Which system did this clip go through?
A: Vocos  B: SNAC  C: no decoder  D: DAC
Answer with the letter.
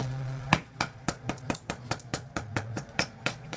A